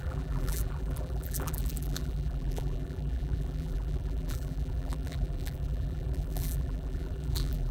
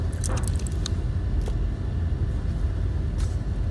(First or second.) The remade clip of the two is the first